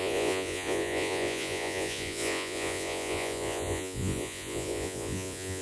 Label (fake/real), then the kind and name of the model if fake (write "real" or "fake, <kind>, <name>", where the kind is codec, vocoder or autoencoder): fake, vocoder, Vocos